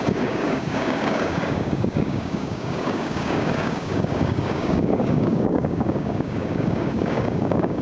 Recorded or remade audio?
remade